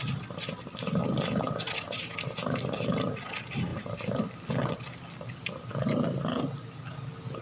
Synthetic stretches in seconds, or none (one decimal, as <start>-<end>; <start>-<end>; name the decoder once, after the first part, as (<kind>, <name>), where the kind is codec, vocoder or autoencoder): none